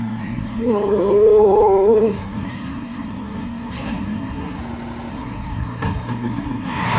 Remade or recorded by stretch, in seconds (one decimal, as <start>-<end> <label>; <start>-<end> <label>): 0.0-4.6 remade; 4.6-5.1 recorded; 5.1-7.0 remade